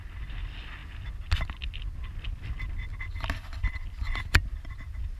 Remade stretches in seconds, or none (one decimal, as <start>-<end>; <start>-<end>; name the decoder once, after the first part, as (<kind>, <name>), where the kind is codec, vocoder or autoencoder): none